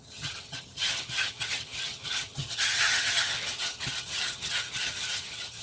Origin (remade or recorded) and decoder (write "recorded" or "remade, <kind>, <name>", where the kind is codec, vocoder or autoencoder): remade, vocoder, HiFi-GAN